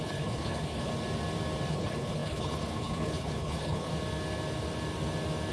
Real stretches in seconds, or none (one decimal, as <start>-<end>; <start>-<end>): 0.9-1.7; 3.9-5.5